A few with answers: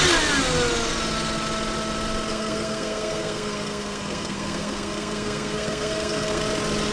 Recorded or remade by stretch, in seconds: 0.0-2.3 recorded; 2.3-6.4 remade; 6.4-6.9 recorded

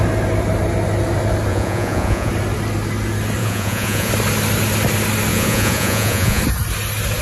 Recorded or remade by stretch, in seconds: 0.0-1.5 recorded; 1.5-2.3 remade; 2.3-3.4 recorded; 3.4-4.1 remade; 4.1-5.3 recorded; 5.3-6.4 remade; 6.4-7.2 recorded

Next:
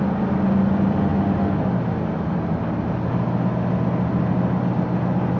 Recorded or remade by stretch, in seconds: 0.0-5.4 recorded

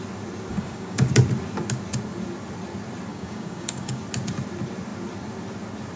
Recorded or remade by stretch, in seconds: 0.0-0.5 recorded; 0.5-1.1 remade; 1.1-3.1 recorded; 3.1-4.0 remade; 4.0-6.0 recorded

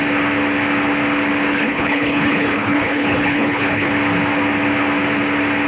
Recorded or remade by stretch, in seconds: 0.0-1.5 recorded; 1.5-3.9 remade; 3.9-5.7 recorded